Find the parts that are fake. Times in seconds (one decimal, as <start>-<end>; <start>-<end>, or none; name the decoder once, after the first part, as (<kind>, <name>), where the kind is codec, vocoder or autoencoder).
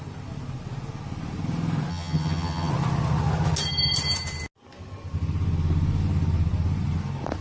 1.9-2.7 (vocoder, HiFi-GAN)